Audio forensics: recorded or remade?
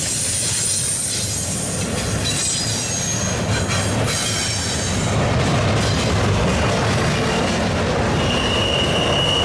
recorded